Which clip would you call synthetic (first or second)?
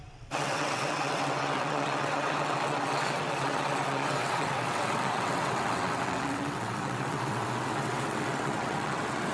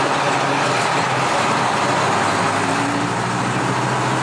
first